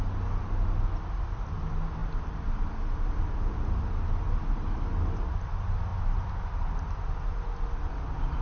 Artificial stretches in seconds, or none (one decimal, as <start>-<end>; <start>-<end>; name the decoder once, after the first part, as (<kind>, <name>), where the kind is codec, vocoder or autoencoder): none